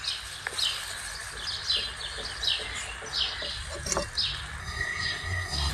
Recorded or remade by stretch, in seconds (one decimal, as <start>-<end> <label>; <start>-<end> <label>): 0.0-4.6 recorded; 4.6-5.7 remade